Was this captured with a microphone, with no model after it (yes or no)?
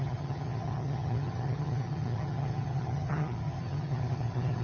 no